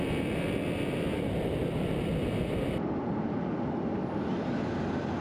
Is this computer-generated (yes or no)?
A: yes